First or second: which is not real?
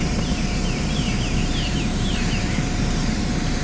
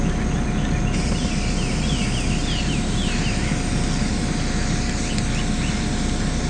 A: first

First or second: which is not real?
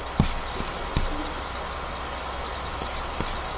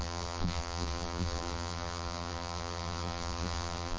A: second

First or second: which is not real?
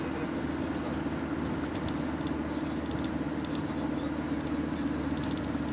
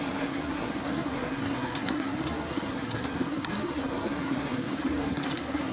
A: second